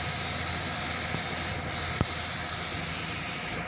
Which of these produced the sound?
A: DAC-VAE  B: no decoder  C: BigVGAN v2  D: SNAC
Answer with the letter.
B